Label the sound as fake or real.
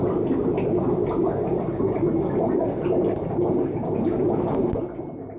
real